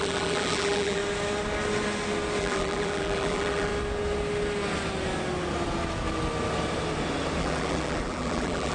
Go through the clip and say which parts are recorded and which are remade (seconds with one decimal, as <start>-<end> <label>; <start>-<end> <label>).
0.0-1.0 remade; 1.0-2.4 recorded; 2.4-3.7 remade; 3.7-7.4 recorded; 7.4-8.7 remade